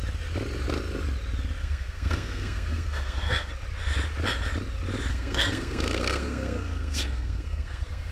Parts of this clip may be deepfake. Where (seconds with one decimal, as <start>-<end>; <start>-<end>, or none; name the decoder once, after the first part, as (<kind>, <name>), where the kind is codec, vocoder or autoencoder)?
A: 1.6-3.5 (codec, SNAC); 5.1-8.1